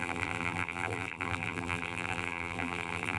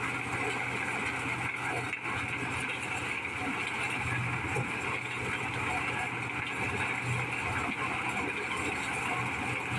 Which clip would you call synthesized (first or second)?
first